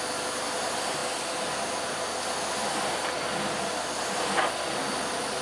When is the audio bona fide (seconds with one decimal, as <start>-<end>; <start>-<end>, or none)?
0.0-5.4